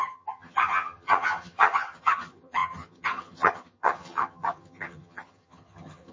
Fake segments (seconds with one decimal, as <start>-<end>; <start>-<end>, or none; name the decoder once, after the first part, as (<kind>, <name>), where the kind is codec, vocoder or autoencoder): 0.0-6.1 (vocoder, HiFi-GAN)